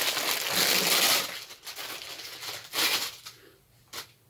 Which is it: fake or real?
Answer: real